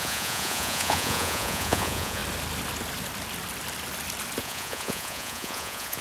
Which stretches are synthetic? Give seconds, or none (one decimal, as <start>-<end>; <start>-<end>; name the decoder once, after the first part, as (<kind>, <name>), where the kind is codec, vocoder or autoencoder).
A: 0.0-2.2 (vocoder, Vocos); 4.4-6.0